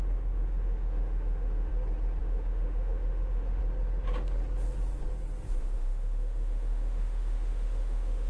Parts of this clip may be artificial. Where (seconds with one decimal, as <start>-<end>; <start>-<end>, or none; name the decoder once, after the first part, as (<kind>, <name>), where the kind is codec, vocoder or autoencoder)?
0.0-1.7 (autoencoder, DAC-VAE); 2.2-3.6; 5.6-8.3